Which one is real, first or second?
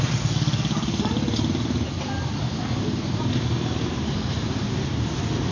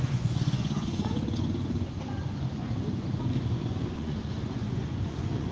first